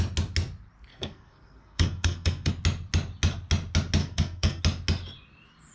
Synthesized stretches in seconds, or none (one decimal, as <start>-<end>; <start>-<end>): 0.9-2.5; 4.0-4.6